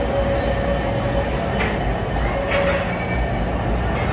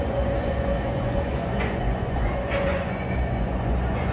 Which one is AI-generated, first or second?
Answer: second